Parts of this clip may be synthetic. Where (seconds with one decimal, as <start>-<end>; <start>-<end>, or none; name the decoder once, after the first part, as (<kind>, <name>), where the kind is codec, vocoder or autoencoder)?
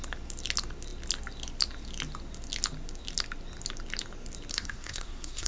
4.5-5.5 (codec, SNAC)